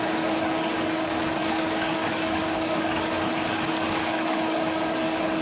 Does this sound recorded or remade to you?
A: remade